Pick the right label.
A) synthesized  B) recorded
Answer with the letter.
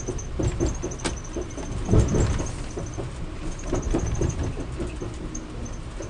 B